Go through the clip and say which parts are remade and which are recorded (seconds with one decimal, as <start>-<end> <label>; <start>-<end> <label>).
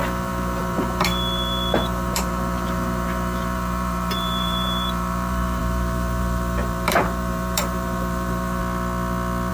0.0-8.6 remade; 8.6-9.5 recorded